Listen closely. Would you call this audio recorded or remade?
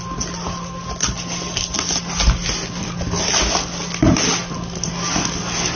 recorded